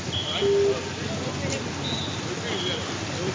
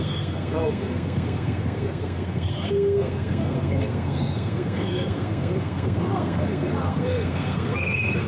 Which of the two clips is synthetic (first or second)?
second